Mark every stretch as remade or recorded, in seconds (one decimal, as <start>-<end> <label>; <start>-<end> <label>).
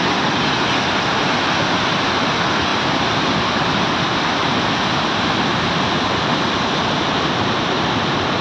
0.0-2.7 recorded; 2.7-3.3 remade; 3.3-8.4 recorded